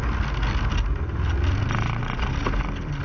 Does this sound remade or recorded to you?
recorded